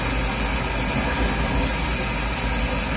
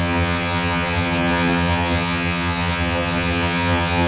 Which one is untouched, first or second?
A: first